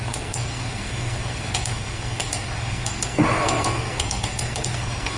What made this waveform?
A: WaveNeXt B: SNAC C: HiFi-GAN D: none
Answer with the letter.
B